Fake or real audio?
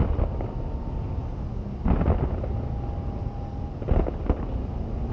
real